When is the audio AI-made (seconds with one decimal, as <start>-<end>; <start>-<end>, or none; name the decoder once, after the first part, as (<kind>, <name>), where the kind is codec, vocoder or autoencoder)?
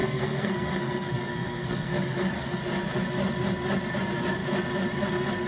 0.0-2.6 (codec, SNAC)